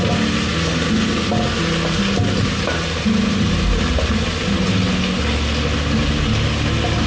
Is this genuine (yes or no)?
yes